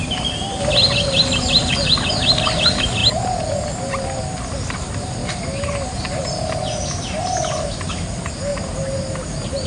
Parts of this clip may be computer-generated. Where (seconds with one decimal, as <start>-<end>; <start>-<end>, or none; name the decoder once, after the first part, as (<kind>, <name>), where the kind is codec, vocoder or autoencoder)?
none